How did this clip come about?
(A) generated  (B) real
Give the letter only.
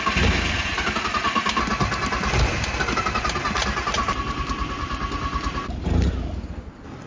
B